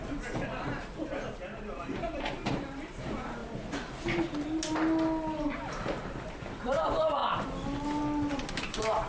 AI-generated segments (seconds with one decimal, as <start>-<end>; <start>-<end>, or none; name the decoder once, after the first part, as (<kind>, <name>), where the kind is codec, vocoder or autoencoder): 0.0-3.4 (vocoder, BigVGAN v2); 5.7-7.2; 8.5-9.1

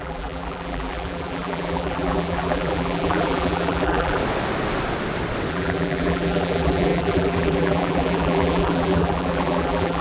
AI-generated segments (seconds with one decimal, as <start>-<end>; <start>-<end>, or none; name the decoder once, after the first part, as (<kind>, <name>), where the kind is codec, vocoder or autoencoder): 0.0-4.2 (vocoder, BigVGAN v2); 5.5-10.0

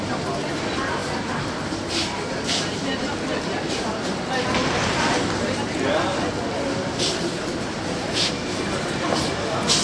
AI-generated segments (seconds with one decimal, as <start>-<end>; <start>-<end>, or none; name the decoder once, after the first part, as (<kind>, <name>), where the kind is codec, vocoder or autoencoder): 4.6-8.3 (vocoder, BigVGAN v2)

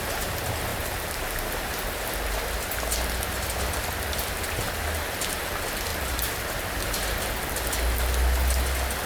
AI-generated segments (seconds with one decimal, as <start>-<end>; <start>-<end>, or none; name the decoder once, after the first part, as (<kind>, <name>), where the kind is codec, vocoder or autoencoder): 0.7-2.1 (vocoder, BigVGAN v2)

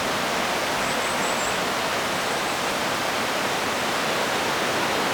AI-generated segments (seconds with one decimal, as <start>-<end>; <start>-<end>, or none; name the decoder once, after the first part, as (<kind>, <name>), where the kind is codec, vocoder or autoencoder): 2.8-3.5 (vocoder, BigVGAN v2)

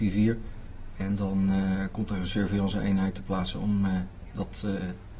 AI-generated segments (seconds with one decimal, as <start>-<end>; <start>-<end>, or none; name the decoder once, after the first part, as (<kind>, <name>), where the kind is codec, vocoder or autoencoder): none

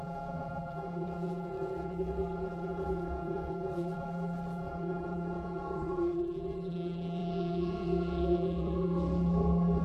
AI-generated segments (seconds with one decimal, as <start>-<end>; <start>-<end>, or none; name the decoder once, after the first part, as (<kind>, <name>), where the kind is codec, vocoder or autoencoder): 0.0-9.8 (vocoder, BigVGAN v2)